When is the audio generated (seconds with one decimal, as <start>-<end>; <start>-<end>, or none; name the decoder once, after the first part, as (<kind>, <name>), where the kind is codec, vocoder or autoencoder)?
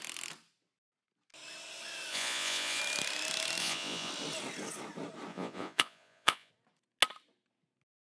2.1-2.8 (vocoder, Vocos); 3.6-4.1; 5.3-6.5